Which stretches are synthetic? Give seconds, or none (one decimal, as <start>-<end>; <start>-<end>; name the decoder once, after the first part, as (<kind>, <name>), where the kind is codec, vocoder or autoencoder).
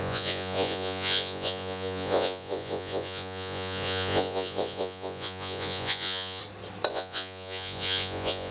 0.0-6.4 (vocoder, Vocos); 6.9-8.5